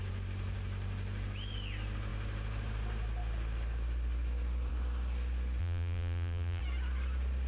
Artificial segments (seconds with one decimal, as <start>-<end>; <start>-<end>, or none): 5.6-6.6